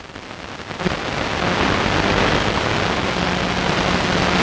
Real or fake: real